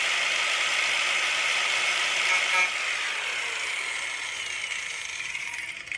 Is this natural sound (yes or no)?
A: yes